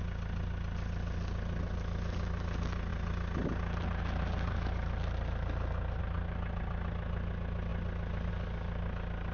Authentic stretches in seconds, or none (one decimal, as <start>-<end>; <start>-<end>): 0.0-9.3